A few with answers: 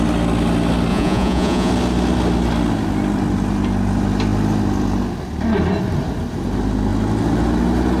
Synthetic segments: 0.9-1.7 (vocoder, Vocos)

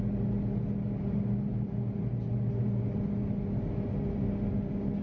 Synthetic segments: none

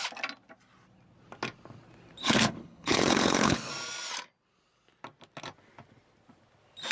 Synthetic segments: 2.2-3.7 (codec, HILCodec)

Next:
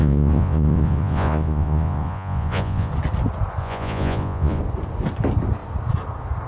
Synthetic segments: 0.0-2.9 (vocoder, Vocos); 3.6-4.6

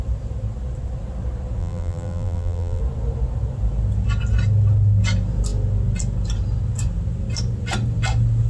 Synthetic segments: 1.6-2.8 (vocoder, BigVGAN v2)

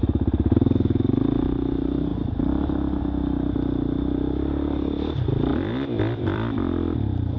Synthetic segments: 5.5-7.4 (vocoder, BigVGAN v2)